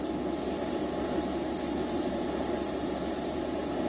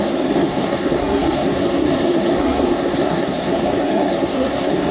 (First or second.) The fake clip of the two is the second